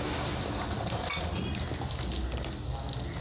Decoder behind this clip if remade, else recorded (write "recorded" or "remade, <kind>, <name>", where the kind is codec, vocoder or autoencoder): recorded